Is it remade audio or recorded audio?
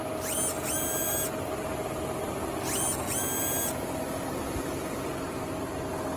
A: recorded